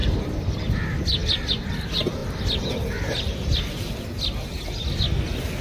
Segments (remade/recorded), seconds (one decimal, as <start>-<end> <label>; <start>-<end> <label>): 0.0-0.6 remade; 0.6-5.6 recorded